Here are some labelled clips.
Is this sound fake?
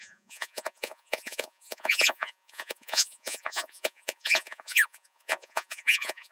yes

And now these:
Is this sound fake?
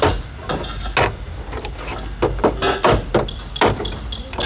no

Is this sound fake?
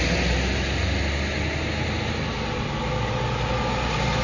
no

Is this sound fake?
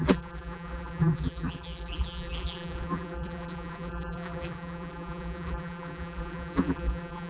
yes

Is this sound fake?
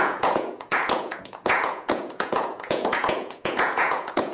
yes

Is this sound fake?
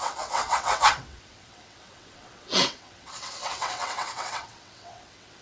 yes